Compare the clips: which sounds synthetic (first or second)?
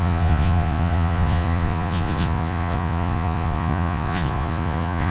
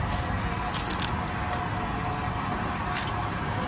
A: first